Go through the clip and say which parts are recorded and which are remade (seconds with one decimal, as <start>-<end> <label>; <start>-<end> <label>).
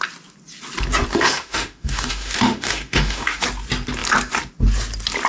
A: 0.0-1.1 recorded; 1.1-3.4 remade; 3.4-5.3 recorded